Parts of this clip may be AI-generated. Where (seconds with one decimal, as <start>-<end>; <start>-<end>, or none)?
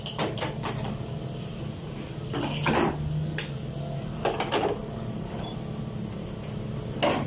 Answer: none